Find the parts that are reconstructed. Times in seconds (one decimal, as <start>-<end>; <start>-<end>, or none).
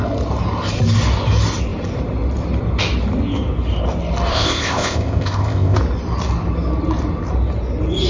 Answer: 4.3-5.8